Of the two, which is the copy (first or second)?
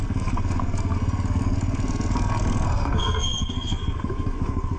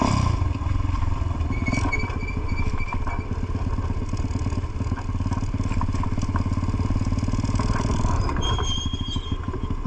first